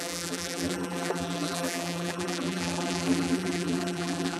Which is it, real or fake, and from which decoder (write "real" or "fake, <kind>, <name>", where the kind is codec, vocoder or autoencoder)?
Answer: fake, vocoder, BigVGAN v2